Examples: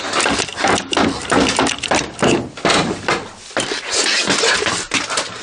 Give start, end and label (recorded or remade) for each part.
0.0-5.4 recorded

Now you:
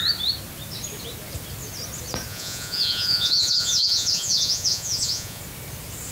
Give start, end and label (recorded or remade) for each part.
0.0-2.3 recorded; 2.3-5.4 remade; 5.4-6.1 recorded

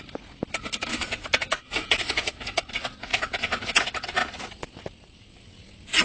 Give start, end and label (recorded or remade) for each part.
0.0-0.9 recorded; 0.9-2.7 remade; 2.7-3.1 recorded; 3.1-3.8 remade; 3.8-6.0 recorded

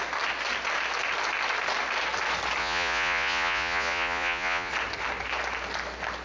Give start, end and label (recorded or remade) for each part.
0.0-2.6 recorded; 2.6-4.7 remade; 4.7-6.2 recorded

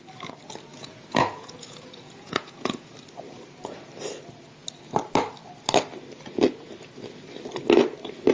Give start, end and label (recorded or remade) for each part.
0.0-0.7 recorded; 0.7-2.9 remade; 2.9-8.3 recorded

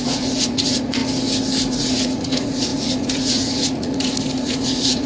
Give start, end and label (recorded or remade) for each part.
0.0-1.0 remade; 1.0-1.7 recorded; 1.7-5.1 remade

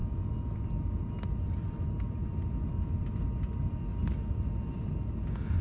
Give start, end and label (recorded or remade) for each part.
0.0-5.6 recorded

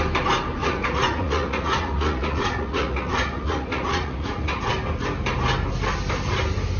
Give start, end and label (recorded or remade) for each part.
0.0-0.6 recorded; 0.6-4.7 remade; 4.7-6.8 recorded